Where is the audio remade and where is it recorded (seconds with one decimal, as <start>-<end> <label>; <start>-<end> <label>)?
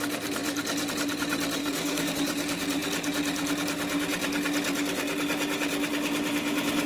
0.0-1.6 recorded; 1.6-2.1 remade; 2.1-6.9 recorded